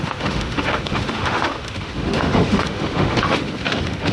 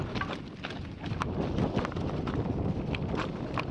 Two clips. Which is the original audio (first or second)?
second